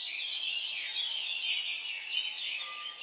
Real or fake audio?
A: real